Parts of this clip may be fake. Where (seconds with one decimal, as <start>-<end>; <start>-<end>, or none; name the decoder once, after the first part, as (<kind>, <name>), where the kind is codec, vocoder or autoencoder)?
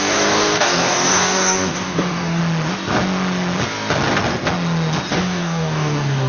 0.0-2.4 (codec, DAC); 5.1-6.3